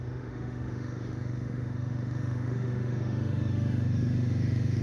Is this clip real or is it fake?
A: fake